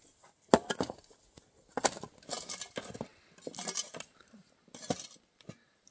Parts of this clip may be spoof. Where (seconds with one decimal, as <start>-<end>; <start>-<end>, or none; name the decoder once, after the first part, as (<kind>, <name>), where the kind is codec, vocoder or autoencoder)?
none